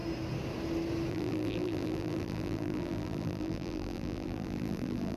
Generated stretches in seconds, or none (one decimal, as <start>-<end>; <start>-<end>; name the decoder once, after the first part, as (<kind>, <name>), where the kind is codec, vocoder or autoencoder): 1.1-5.2 (vocoder, BigVGAN v2)